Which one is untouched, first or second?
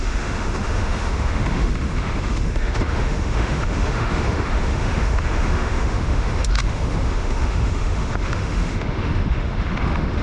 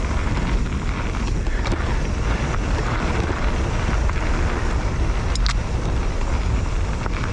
second